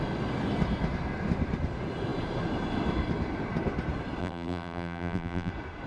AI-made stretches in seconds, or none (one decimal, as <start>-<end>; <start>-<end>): 4.2-5.5